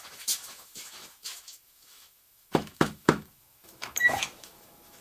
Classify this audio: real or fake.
fake